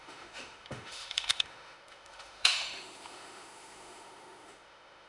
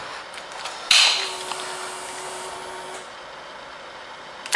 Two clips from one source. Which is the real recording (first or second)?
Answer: second